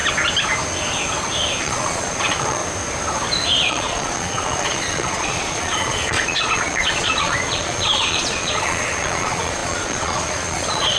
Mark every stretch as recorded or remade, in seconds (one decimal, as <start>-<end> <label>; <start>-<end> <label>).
0.0-1.6 recorded; 1.6-2.6 remade; 2.6-3.7 recorded; 3.7-11.0 remade